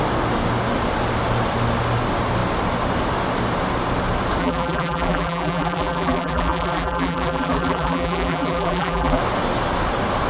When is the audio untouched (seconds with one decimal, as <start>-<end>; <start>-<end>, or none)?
0.0-4.4; 9.2-10.3